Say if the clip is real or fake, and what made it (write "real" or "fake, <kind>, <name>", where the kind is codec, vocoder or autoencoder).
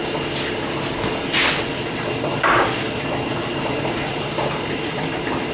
real